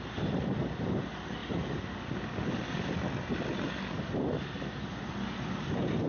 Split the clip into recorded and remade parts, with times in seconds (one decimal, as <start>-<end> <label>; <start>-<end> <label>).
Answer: 0.0-6.1 recorded